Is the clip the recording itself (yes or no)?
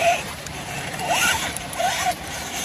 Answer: no